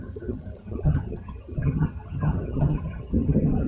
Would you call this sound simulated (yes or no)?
yes